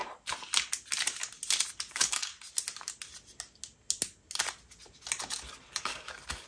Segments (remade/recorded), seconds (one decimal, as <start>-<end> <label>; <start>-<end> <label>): 0.0-1.9 recorded; 1.9-2.3 remade; 2.3-5.8 recorded; 5.8-6.5 remade